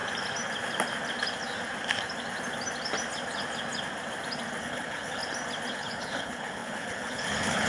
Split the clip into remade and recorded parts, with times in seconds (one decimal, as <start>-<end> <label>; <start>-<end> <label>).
0.0-4.6 recorded; 4.6-5.2 remade; 5.2-5.7 recorded; 5.7-7.7 remade